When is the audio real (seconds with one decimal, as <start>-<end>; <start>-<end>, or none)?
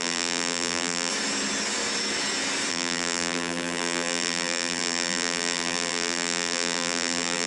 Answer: 1.1-2.7